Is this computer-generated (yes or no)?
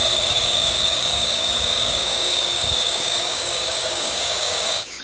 yes